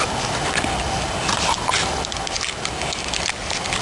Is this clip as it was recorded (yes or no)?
yes